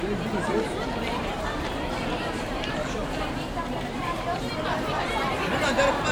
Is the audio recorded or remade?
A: remade